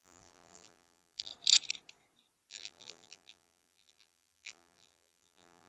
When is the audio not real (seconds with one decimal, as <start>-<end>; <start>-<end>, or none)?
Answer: 0.0-1.3; 2.5-5.7